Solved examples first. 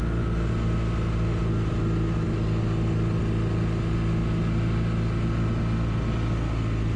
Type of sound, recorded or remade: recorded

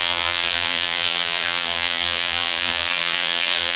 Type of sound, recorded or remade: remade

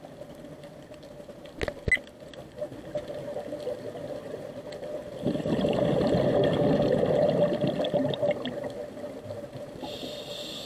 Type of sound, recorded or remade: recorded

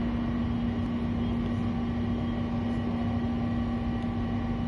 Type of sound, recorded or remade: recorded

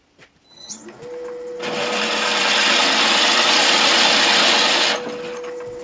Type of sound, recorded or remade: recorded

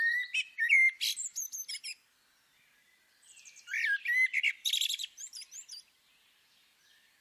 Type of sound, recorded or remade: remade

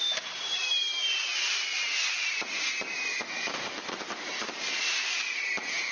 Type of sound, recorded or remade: remade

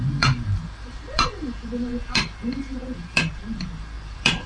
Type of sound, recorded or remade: remade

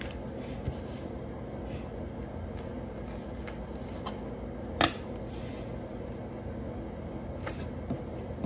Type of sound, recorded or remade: recorded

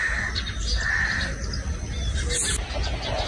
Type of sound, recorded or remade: recorded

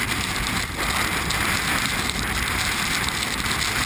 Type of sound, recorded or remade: recorded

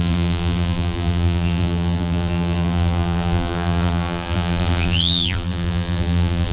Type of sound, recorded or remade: remade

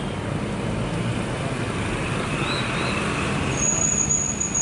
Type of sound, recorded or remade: recorded